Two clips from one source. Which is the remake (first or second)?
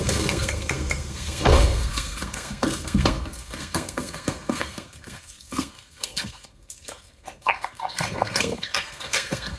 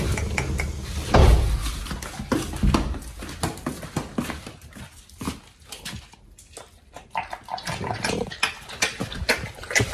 first